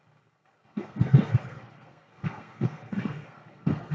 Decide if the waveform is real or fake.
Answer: fake